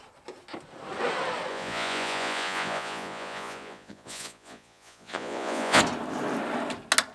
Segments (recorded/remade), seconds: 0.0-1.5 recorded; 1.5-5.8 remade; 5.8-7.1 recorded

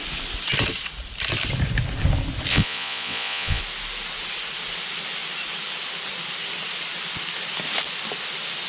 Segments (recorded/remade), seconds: 0.0-2.5 recorded; 2.5-3.6 remade; 3.6-8.7 recorded

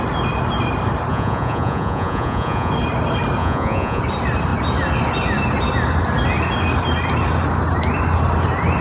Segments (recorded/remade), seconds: 0.0-1.1 recorded; 1.1-2.7 remade; 2.7-3.4 recorded; 3.4-4.0 remade; 4.0-8.8 recorded

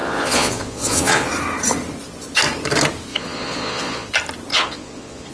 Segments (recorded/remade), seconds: 0.0-1.3 remade; 1.3-3.1 recorded; 3.1-4.1 remade; 4.1-4.5 recorded; 4.5-5.3 remade

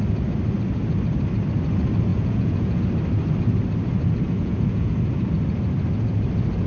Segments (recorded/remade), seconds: 0.0-2.1 recorded; 2.1-2.8 remade; 2.8-4.4 recorded; 4.4-4.9 remade; 4.9-6.7 recorded

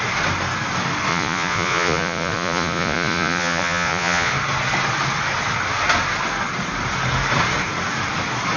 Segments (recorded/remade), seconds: 0.0-1.1 recorded; 1.1-4.3 remade; 4.3-8.6 recorded

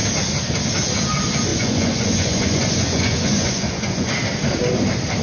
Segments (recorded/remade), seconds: 0.0-1.5 recorded; 1.5-4.1 remade; 4.1-5.2 recorded

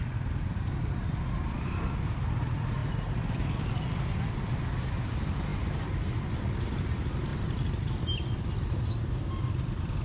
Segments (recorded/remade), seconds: 0.0-10.0 recorded